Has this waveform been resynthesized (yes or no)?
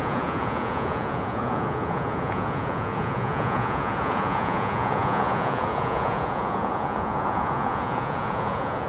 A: yes